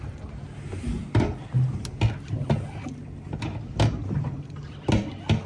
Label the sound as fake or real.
real